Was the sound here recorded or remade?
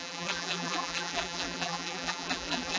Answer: remade